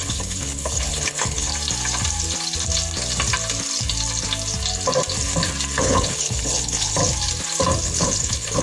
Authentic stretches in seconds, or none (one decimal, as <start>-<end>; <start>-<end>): 1.5-5.8; 7.0-7.8